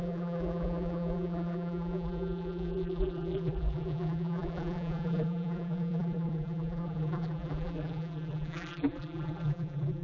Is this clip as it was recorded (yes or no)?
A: no